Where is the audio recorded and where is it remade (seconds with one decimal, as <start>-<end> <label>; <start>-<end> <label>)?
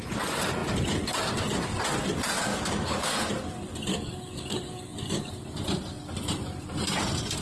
0.0-2.5 recorded; 2.5-3.3 remade; 3.3-3.9 recorded; 3.9-5.3 remade; 5.3-7.4 recorded